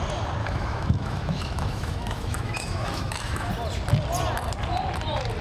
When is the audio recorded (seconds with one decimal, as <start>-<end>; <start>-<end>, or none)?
0.0-0.4; 3.5-5.4